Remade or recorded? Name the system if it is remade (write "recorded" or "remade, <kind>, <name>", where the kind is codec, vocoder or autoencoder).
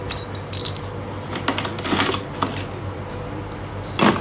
recorded